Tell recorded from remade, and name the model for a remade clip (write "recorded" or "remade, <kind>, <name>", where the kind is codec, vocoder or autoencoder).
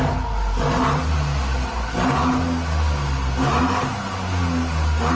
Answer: recorded